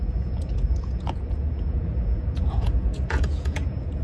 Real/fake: fake